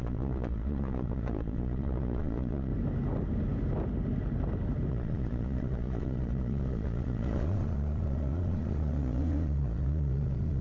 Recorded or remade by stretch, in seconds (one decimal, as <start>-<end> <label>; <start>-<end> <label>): 0.0-2.7 remade; 2.7-4.9 recorded; 4.9-10.6 remade